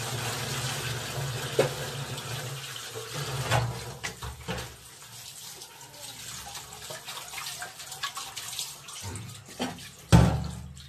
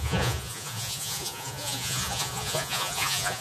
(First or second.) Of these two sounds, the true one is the first